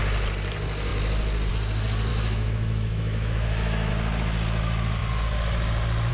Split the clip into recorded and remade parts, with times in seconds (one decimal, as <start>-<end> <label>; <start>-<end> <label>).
0.0-2.1 recorded; 2.1-3.9 remade; 3.9-6.1 recorded